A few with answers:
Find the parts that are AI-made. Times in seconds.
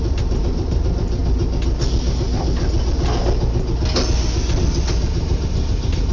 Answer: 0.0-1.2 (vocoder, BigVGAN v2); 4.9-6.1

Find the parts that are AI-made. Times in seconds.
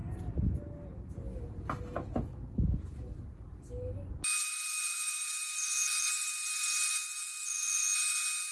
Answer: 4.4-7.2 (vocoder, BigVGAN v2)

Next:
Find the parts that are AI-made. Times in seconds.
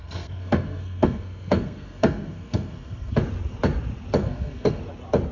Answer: 0.0-3.2 (codec, SNAC); 4.2-4.8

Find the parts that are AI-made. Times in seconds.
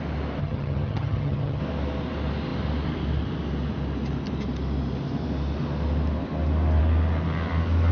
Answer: 0.4-1.6 (vocoder, HiFi-GAN)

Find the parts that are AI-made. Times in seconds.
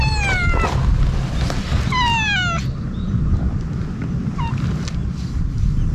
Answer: none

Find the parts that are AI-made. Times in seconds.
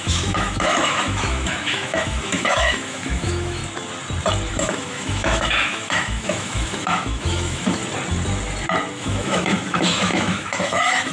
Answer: 0.0-3.6 (autoencoder, DAC-VAE); 4.5-7.8; 8.9-11.1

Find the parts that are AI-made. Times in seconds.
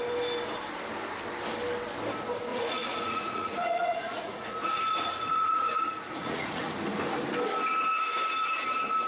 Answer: 2.5-6.7 (vocoder, Vocos)